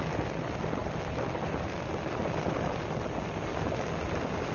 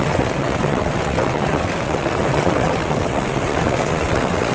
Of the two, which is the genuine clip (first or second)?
first